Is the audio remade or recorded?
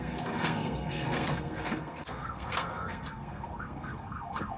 remade